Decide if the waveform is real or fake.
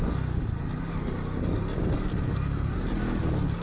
real